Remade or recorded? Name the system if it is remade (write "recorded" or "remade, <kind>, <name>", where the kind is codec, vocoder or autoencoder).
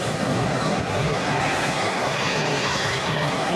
remade, codec, SNAC